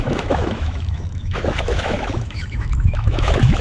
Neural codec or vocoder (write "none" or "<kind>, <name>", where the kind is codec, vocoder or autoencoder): autoencoder, DAC-VAE